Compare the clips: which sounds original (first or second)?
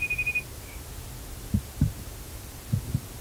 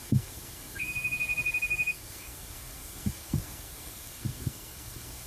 first